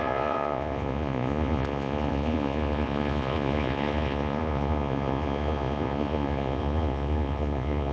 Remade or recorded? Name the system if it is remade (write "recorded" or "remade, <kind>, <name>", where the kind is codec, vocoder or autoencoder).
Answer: remade, vocoder, Vocos